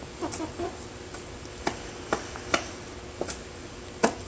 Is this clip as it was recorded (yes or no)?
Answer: yes